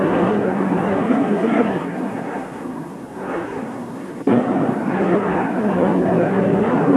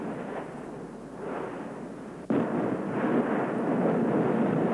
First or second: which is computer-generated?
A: first